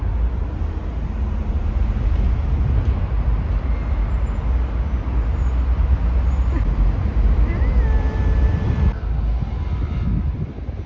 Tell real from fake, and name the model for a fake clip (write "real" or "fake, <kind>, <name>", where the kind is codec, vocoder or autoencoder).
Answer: real